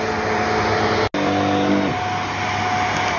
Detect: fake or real real